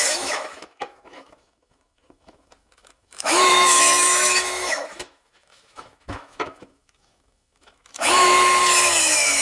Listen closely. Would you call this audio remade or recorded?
remade